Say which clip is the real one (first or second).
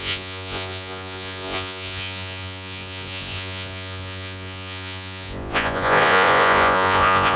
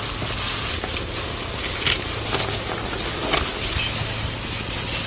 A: second